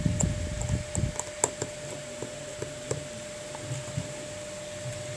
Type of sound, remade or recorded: recorded